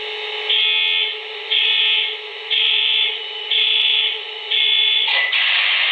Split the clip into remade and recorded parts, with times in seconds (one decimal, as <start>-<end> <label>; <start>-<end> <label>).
0.0-1.2 recorded; 1.2-1.8 remade; 1.8-2.3 recorded; 2.3-5.9 remade